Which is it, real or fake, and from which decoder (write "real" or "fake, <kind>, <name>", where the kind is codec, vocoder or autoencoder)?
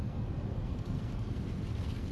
fake, codec, SNAC